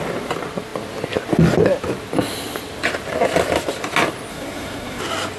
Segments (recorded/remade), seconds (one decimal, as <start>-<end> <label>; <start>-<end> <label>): 0.0-4.3 recorded; 4.3-5.0 remade; 5.0-5.4 recorded